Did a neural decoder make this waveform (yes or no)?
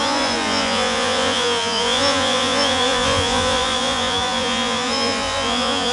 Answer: yes